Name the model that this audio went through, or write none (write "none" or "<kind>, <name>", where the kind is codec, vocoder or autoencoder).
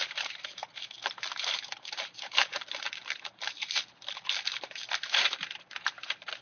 vocoder, BigVGAN v2